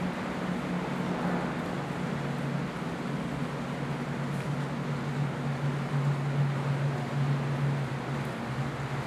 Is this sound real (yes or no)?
yes